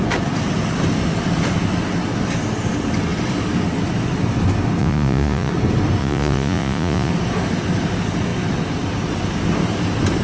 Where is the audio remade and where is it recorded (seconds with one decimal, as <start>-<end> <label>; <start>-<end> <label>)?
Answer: 0.0-4.8 recorded; 4.8-5.5 remade; 5.5-6.0 recorded; 6.0-7.1 remade; 7.1-10.2 recorded